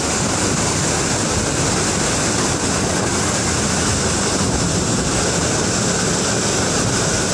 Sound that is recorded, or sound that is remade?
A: recorded